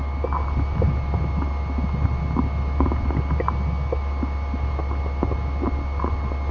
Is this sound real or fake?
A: real